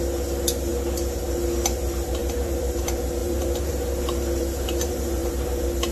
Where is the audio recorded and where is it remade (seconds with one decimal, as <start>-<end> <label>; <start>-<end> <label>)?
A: 0.0-2.2 recorded; 2.2-2.8 remade; 2.8-3.2 recorded; 3.2-5.3 remade; 5.3-5.9 recorded